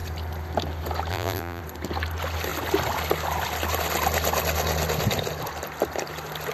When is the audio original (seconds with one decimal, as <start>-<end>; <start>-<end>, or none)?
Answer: 0.0-1.1; 1.6-6.5

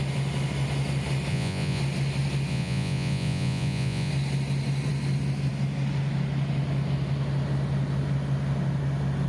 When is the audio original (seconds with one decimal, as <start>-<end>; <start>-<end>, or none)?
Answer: 0.0-1.3; 1.8-2.5; 4.1-9.3

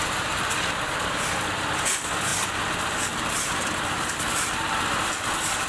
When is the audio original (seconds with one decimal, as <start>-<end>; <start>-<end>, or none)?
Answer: 0.0-5.7

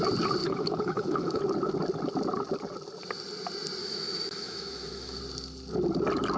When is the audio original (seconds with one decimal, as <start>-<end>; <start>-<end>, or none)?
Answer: 0.0-0.4; 1.4-3.8; 5.2-6.4

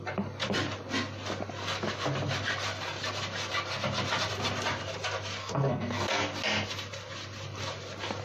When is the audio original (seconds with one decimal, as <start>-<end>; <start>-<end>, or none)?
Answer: 0.0-5.4; 6.2-8.2

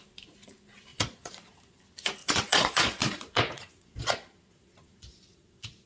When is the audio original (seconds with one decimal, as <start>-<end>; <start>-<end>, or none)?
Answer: 0.0-0.9; 1.8-2.2

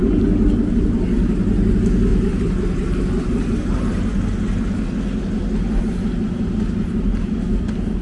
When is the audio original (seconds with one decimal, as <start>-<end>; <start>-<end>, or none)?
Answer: 0.0-8.0